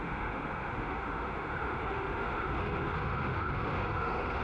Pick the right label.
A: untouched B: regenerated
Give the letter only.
B